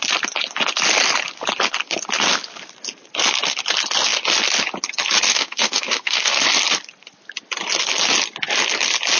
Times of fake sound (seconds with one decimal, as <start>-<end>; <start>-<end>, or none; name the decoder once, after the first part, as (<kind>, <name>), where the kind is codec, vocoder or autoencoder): 5.3-6.4 (autoencoder, DAC-VAE)